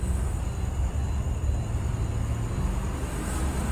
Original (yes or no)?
yes